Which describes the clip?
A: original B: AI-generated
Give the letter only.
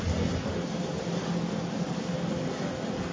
A